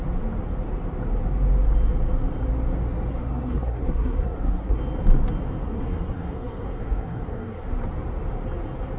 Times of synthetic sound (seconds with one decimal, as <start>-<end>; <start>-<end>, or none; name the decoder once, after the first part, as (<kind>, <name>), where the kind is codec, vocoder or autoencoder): 3.1-4.8 (codec, SNAC); 5.6-7.8